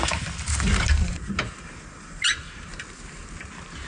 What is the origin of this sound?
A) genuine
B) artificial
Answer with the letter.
A